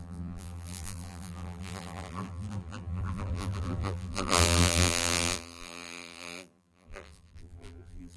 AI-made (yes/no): yes